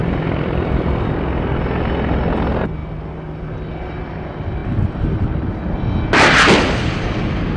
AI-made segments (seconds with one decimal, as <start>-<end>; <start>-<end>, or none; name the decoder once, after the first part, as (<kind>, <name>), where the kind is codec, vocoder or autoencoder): 0.0-1.1 (vocoder, BigVGAN v2)

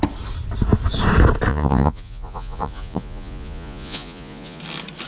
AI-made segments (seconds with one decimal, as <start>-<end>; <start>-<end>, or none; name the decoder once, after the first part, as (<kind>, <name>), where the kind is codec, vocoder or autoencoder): 1.5-4.6 (vocoder, Vocos)

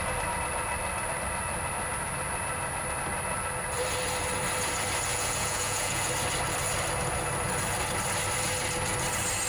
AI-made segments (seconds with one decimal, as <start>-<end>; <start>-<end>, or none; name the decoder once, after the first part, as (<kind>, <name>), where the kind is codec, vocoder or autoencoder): 5.1-6.1 (vocoder, Vocos)

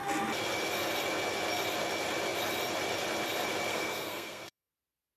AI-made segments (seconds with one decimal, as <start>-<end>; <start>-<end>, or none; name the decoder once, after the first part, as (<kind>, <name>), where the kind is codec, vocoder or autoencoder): 3.7-4.7 (codec, SNAC)

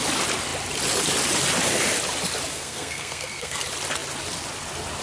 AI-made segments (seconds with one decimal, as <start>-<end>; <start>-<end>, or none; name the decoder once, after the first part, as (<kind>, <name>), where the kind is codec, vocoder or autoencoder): 2.5-3.6 (codec, SNAC)

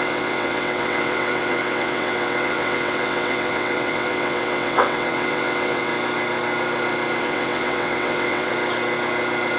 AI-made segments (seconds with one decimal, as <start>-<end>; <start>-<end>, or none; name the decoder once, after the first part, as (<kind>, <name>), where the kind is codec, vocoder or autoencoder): 0.0-5.9 (vocoder, WaveNeXt); 7.2-8.5